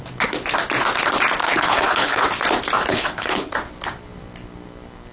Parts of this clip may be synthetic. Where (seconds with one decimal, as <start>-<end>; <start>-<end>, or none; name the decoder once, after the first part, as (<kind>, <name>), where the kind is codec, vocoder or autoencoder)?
1.4-2.2 (codec, HILCodec); 2.9-3.5